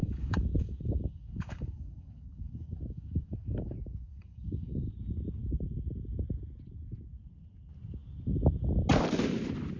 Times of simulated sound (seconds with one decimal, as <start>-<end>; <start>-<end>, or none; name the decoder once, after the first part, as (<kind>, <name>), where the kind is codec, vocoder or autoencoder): 0.0-4.9 (codec, DAC)

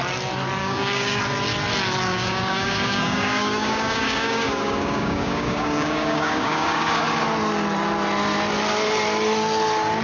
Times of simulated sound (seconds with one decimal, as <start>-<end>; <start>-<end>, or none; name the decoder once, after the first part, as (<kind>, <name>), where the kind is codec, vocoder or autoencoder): 0.6-1.2 (codec, DAC); 2.1-7.0

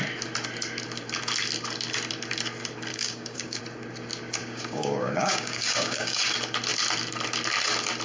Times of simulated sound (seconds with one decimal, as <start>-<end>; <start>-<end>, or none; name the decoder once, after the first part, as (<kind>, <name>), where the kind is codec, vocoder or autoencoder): 2.9-3.6 (codec, DAC); 4.4-6.2

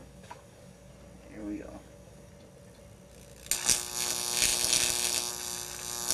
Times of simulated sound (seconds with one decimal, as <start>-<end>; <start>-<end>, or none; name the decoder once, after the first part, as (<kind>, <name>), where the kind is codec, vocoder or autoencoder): 0.0-0.9 (codec, DAC); 1.4-2.3

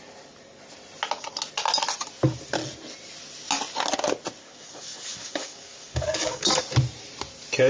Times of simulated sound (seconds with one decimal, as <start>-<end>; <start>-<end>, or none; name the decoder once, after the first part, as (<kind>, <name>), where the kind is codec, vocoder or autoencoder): 4.4-6.6 (codec, DAC)

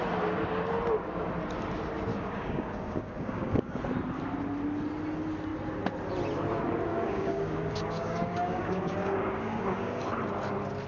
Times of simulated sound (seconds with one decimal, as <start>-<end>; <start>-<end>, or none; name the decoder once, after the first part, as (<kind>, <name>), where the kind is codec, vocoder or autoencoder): 2.1-3.8 (codec, DAC); 6.9-10.0

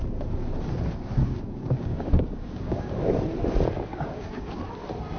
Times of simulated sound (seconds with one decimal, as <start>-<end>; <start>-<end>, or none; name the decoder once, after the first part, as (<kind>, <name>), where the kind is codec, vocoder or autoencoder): 1.2-2.9 (codec, DAC); 3.9-4.6